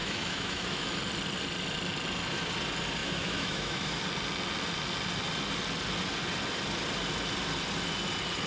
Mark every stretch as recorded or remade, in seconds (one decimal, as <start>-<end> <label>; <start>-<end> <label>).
0.0-1.0 remade; 1.0-3.0 recorded; 3.0-4.0 remade; 4.0-8.5 recorded